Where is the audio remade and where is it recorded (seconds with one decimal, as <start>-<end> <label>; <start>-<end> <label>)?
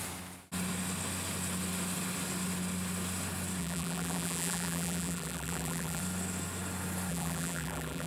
0.0-3.6 recorded; 3.6-6.0 remade; 6.0-7.1 recorded; 7.1-8.1 remade